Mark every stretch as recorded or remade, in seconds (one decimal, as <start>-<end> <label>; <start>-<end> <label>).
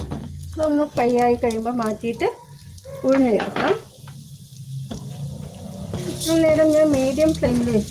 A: 0.0-1.1 remade; 1.1-3.2 recorded; 3.2-3.6 remade; 3.6-7.9 recorded